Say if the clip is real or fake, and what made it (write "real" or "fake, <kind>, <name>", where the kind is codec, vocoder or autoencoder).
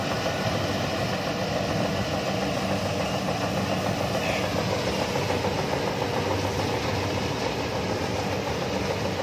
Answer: real